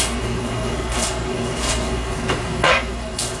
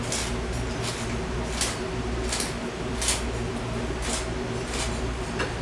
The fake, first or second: first